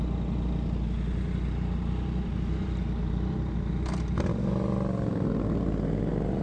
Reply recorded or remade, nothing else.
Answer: recorded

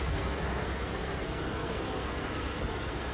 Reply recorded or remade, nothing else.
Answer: remade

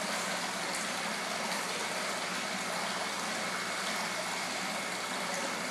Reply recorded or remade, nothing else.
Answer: recorded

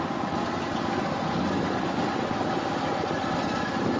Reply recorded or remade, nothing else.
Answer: recorded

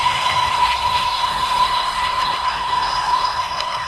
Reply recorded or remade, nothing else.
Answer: remade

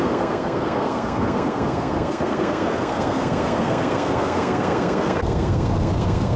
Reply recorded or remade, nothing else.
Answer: remade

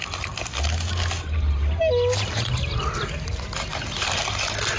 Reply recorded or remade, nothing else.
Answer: recorded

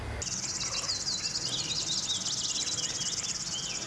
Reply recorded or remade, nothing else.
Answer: recorded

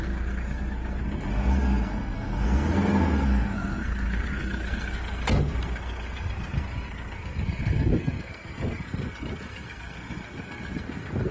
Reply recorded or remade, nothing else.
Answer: remade